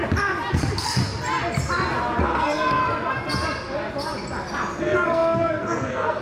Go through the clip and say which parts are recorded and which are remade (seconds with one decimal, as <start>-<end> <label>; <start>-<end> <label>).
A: 0.0-0.5 recorded; 0.5-1.0 remade; 1.0-2.2 recorded; 2.2-2.8 remade; 2.8-4.8 recorded; 4.8-6.2 remade